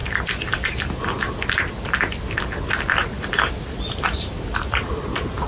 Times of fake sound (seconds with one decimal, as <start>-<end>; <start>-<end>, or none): none